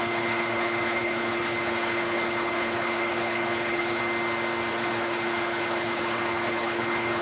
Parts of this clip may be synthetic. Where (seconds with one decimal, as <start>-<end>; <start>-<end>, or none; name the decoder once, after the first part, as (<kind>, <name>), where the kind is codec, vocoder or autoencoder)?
0.0-4.0 (codec, HILCodec); 4.7-7.2